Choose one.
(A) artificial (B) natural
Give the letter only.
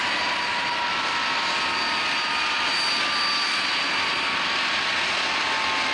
B